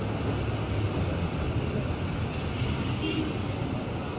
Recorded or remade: recorded